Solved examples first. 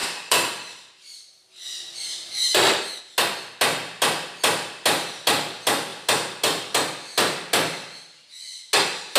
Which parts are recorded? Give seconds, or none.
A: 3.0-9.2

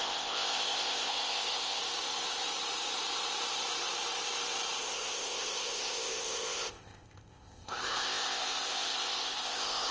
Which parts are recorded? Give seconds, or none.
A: 1.8-4.8